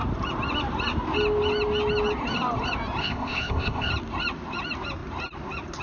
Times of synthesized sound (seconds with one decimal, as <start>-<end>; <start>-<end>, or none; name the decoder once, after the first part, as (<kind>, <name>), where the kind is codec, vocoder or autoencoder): 3.0-3.9 (codec, ZipCodec)